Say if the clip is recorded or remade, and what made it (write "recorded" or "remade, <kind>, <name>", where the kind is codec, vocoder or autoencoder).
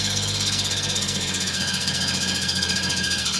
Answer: remade, codec, SNAC